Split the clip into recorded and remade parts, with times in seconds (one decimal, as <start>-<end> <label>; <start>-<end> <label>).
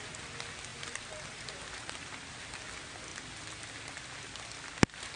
0.0-0.7 recorded; 0.7-1.6 remade; 1.6-5.2 recorded